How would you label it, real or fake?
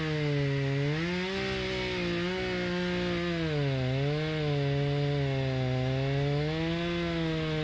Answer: real